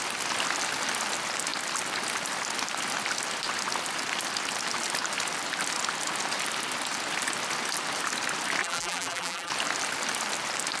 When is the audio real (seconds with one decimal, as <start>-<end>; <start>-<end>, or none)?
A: 0.0-8.6; 9.5-10.8